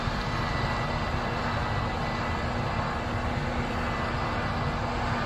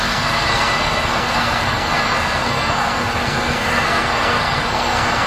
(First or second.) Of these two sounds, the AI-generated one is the second